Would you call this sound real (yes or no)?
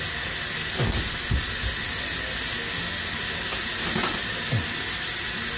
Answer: yes